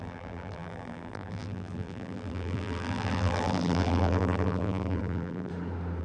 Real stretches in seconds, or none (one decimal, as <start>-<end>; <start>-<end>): 5.5-6.0

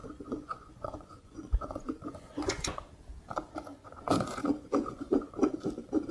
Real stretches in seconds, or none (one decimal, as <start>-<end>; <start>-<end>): 2.9-3.7; 5.3-6.1

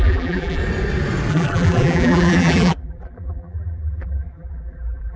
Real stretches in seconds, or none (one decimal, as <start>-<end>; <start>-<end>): 0.6-1.3

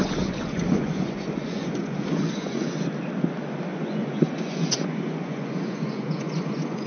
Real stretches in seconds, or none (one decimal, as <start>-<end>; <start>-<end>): 2.8-3.7

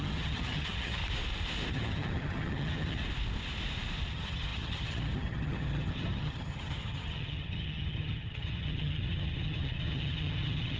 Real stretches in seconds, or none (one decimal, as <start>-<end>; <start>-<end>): 1.0-1.7; 3.0-4.1